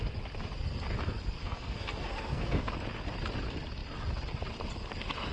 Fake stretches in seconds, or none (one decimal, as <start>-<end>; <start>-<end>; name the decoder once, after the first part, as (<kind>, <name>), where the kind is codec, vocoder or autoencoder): 1.4-2.7 (codec, SNAC)